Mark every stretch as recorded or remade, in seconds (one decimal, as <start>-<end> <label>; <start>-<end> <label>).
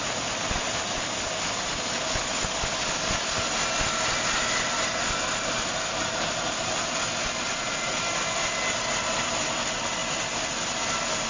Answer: 0.0-7.5 recorded; 7.5-8.0 remade; 8.0-11.3 recorded